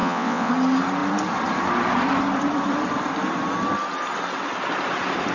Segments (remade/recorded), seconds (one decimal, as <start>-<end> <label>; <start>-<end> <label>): 0.0-0.5 remade; 0.5-5.3 recorded